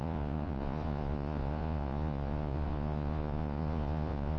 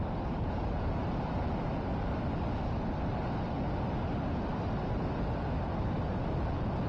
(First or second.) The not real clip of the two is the first